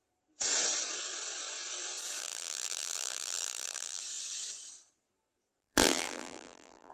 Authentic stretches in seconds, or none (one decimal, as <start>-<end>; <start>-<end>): 0.0-2.2; 4.0-5.6